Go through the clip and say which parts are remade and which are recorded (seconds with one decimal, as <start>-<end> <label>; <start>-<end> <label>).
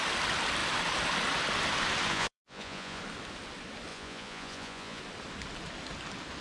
0.0-2.1 recorded; 2.1-3.0 remade; 3.0-3.9 recorded; 3.9-5.0 remade; 5.0-6.4 recorded